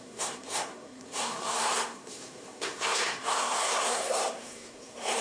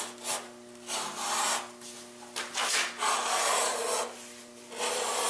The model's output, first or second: first